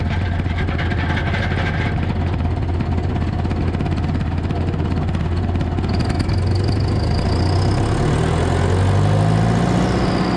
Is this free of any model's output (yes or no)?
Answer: yes